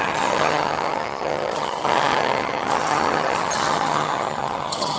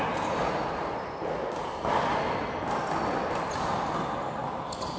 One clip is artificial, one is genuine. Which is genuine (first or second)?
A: second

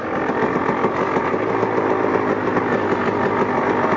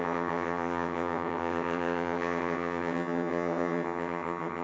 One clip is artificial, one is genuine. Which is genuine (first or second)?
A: first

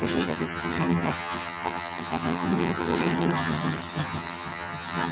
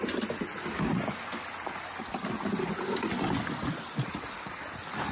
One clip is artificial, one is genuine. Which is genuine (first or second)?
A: second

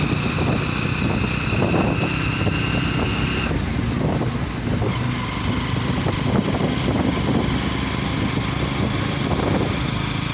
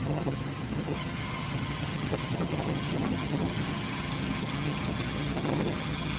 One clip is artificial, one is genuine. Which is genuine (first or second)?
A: first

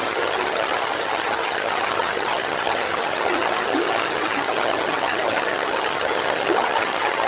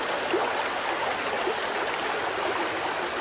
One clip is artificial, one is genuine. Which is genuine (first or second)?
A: second